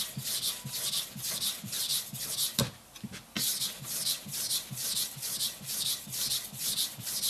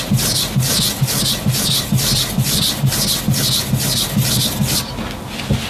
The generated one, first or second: first